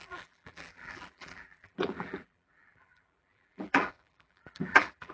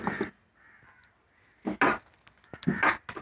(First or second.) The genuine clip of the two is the second